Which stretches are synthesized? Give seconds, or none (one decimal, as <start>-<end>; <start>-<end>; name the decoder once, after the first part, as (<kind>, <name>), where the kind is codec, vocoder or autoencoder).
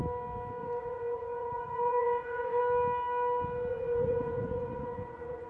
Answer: 0.6-2.6 (vocoder, Vocos); 3.7-5.5